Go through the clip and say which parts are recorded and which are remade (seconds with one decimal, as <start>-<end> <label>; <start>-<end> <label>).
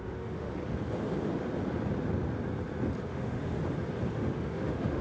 0.0-0.5 remade; 0.5-3.0 recorded; 3.0-3.6 remade; 3.6-4.1 recorded; 4.1-5.0 remade